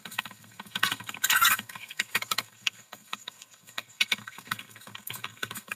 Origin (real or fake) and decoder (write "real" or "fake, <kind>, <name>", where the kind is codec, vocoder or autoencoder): fake, codec, SNAC